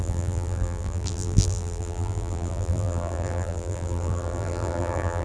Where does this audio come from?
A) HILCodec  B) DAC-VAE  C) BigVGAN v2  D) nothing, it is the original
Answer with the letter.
C